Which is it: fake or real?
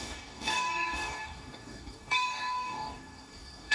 fake